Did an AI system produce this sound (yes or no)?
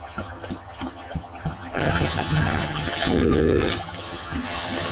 yes